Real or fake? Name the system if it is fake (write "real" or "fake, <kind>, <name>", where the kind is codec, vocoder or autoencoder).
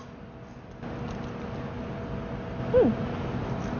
real